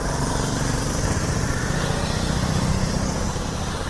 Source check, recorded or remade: recorded